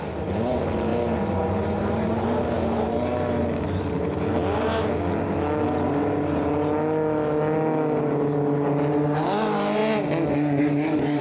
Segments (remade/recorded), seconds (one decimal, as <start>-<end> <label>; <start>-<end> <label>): 0.0-4.4 remade; 4.4-8.9 recorded; 8.9-9.8 remade; 9.8-10.6 recorded; 10.6-11.2 remade